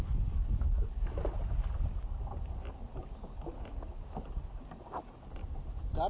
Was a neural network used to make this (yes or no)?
no